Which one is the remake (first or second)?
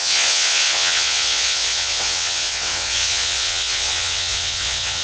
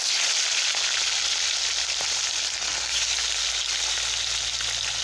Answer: first